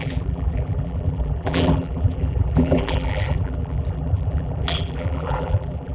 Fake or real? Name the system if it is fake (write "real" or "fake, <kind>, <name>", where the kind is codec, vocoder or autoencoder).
fake, vocoder, BigVGAN v2